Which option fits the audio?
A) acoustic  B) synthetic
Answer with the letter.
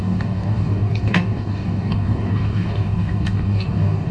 B